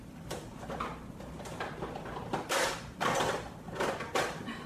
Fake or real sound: real